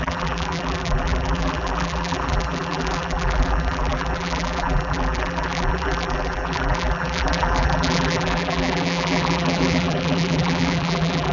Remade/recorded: remade